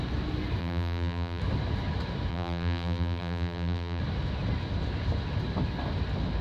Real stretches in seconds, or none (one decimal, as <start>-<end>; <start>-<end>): 0.0-0.6; 1.4-2.3; 4.0-6.4